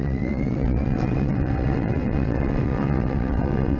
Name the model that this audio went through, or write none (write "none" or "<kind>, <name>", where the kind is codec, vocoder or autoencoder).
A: vocoder, WaveNeXt